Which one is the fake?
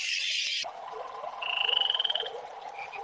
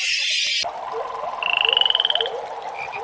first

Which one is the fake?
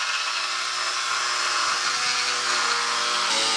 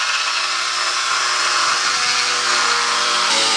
second